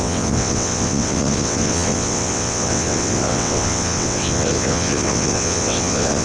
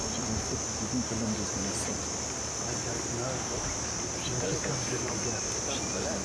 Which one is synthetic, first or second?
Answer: first